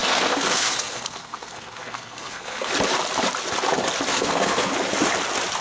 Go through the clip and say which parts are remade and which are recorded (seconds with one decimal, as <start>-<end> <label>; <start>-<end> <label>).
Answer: 0.0-2.7 remade; 2.7-4.1 recorded; 4.1-4.7 remade; 4.7-5.6 recorded